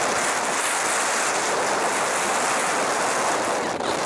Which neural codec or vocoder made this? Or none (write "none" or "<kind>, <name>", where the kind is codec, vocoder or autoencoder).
none